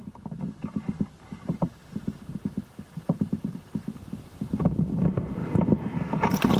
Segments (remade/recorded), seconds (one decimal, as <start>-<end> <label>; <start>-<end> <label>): 0.0-0.6 recorded; 0.6-4.6 remade; 4.6-5.4 recorded; 5.4-6.6 remade